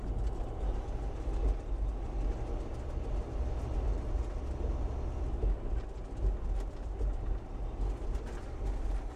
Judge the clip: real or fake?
real